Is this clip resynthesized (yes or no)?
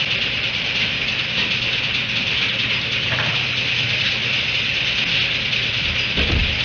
yes